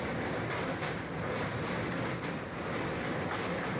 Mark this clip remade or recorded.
recorded